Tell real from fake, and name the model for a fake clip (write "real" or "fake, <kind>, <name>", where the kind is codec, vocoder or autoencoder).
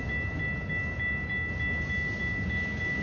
real